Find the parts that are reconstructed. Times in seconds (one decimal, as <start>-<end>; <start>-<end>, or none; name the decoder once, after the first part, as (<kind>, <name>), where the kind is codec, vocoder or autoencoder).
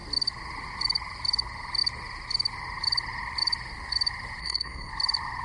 4.4-4.9 (codec, SNAC)